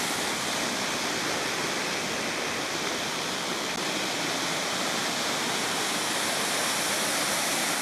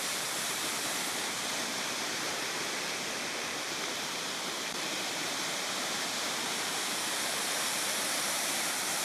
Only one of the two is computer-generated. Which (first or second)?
second